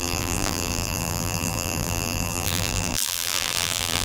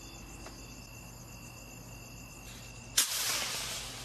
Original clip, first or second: second